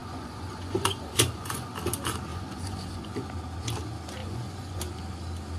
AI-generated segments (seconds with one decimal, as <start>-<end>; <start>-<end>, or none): 0.0-1.7; 2.3-3.1; 4.2-4.8

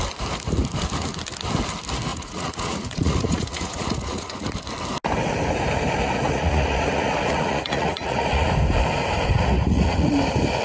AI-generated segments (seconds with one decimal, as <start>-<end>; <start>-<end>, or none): 2.1-4.5; 6.0-8.5; 9.3-10.1